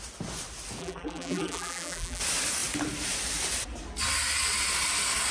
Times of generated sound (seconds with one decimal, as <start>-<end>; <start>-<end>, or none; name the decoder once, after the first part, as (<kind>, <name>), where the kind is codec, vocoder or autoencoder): 0.8-2.2 (vocoder, BigVGAN v2)